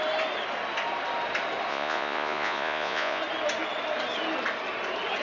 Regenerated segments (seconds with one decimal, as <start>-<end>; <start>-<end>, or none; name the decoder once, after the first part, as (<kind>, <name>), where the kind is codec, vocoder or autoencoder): 1.7-3.2 (vocoder, Vocos)